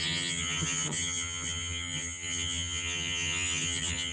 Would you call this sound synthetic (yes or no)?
yes